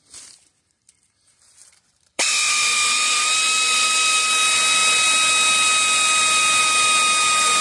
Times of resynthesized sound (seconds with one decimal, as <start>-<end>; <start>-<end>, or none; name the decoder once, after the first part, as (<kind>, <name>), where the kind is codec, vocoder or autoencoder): 1.6-2.3 (vocoder, BigVGAN v2)